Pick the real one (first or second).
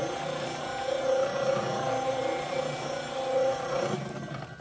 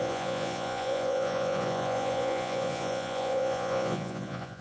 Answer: first